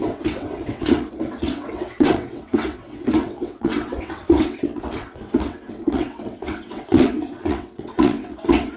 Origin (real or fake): fake